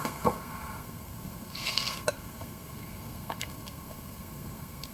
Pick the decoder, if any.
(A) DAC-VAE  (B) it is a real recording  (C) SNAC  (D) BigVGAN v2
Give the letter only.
C